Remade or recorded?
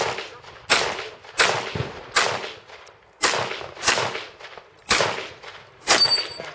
recorded